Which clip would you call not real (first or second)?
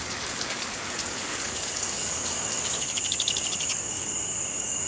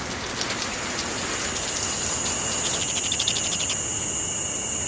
first